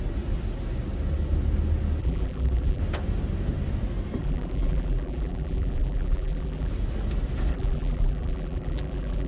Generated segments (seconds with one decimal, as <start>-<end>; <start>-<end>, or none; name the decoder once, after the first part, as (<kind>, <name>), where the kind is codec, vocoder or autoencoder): 2.0-2.8 (vocoder, BigVGAN v2); 4.2-6.7; 7.5-9.3